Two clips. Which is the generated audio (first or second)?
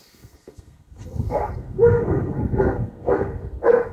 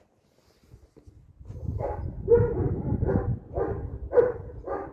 first